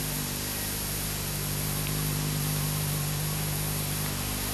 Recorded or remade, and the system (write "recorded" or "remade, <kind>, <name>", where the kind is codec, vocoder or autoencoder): recorded